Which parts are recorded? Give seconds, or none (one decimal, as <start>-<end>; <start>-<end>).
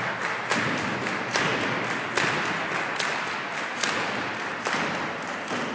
0.0-5.7